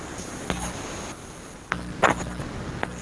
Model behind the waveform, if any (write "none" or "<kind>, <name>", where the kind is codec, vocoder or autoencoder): none